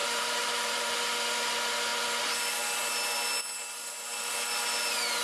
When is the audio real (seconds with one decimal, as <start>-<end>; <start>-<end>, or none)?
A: 1.0-5.2